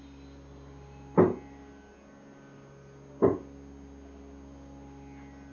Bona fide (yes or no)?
yes